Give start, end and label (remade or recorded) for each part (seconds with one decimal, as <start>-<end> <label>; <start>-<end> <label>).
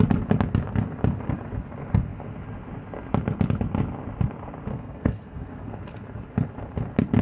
0.0-4.7 recorded; 4.7-5.8 remade; 5.8-7.2 recorded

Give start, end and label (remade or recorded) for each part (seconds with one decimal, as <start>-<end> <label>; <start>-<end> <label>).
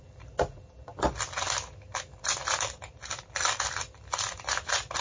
0.0-5.0 recorded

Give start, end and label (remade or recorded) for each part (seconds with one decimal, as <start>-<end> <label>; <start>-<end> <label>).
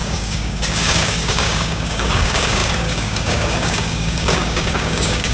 0.0-5.3 remade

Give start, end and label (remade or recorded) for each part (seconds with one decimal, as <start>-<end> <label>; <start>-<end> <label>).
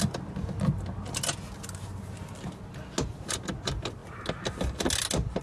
0.0-5.4 recorded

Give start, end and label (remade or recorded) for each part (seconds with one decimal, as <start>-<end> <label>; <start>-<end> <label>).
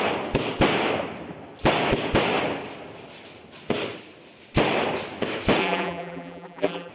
0.0-5.6 recorded; 5.6-6.9 remade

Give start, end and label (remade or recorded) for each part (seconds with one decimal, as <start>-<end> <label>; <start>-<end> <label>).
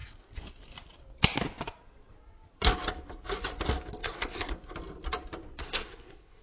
0.0-4.0 recorded; 4.0-4.5 remade; 4.5-5.6 recorded; 5.6-6.4 remade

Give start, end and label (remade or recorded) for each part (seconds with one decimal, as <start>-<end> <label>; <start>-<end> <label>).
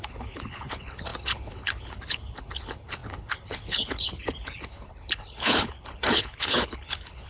0.0-7.3 remade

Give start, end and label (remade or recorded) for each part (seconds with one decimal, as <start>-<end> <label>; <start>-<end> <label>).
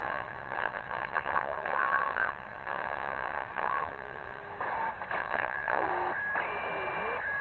0.0-4.4 remade; 4.4-5.2 recorded; 5.2-5.9 remade; 5.9-7.4 recorded